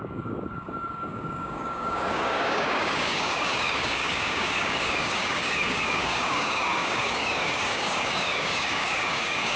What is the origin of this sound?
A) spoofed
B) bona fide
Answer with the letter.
A